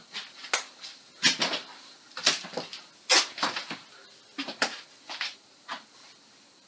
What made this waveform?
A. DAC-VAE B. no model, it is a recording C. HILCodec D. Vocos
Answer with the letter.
B